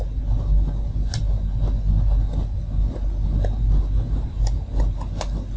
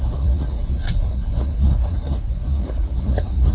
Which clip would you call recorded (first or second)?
first